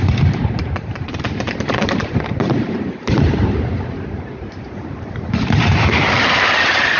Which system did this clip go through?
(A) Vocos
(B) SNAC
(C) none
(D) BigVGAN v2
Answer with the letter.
D